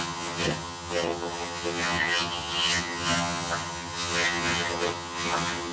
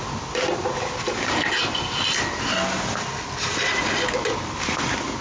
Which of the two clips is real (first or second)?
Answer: second